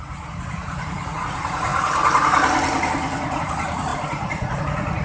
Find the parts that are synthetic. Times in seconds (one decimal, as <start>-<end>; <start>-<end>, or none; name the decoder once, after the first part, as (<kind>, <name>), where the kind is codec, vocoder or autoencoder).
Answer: 0.0-1.7 (vocoder, Vocos); 3.4-5.0